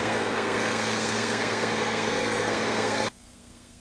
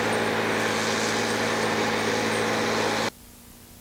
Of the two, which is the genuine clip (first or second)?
second